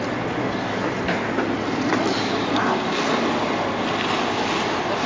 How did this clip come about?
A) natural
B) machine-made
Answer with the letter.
A